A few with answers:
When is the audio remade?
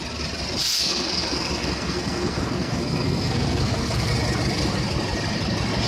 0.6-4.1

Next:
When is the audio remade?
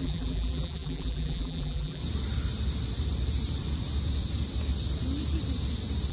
0.0-2.0